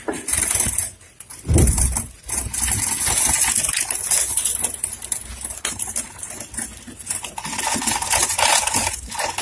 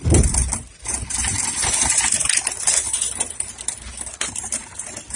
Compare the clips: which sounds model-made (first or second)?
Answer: second